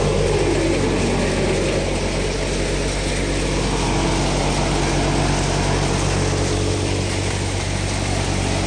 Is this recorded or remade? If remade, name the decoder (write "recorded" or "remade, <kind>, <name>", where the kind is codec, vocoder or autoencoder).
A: recorded